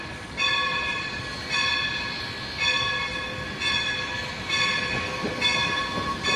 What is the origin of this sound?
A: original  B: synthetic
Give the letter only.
A